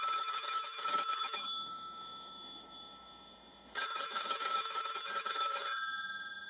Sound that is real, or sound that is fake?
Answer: fake